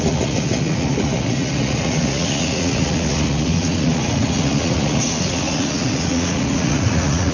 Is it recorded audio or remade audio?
remade